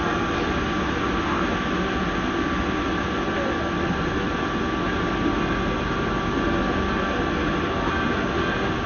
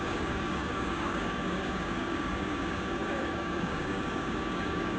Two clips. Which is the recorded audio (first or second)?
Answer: first